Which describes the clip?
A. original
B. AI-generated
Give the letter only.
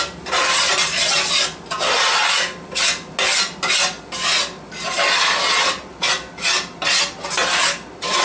A